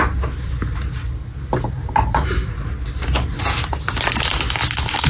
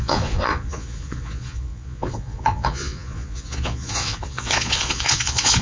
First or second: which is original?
first